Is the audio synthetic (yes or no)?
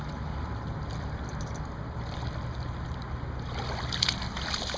no